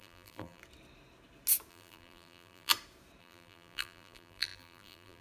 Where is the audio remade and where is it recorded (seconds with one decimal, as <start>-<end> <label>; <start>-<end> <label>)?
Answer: 0.0-0.6 remade; 0.6-1.7 recorded; 1.7-2.7 remade; 2.7-3.2 recorded; 3.2-5.2 remade